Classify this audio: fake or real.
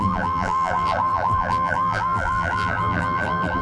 fake